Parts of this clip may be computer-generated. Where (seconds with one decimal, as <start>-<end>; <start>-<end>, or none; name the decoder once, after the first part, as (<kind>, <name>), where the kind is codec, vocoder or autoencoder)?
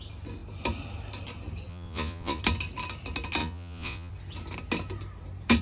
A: 1.7-2.4 (vocoder, Vocos); 3.4-4.1